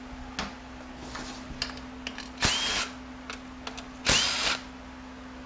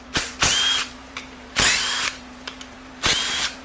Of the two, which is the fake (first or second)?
second